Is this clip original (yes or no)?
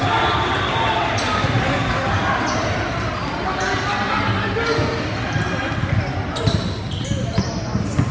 yes